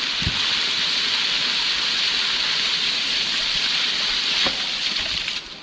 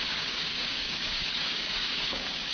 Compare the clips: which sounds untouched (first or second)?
first